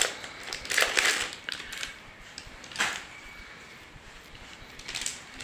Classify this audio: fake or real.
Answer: fake